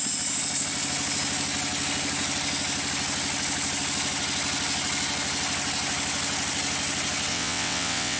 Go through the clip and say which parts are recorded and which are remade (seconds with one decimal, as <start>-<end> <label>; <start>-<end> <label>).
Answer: 0.0-7.3 recorded; 7.3-8.2 remade